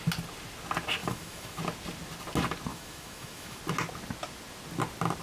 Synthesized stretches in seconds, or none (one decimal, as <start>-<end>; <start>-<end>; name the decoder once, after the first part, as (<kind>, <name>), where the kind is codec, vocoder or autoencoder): 1.0-1.6 (autoencoder, DAC-VAE); 2.7-3.6